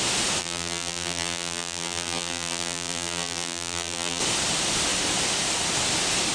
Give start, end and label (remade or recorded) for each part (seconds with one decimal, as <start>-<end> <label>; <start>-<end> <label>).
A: 0.0-0.4 recorded; 0.4-4.2 remade; 4.2-6.3 recorded